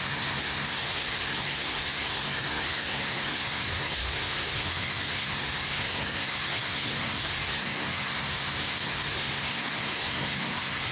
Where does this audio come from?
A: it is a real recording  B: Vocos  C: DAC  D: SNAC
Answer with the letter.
D